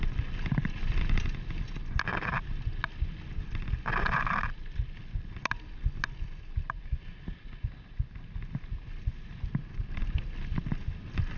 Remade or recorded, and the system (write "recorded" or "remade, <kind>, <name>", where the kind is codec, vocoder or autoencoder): recorded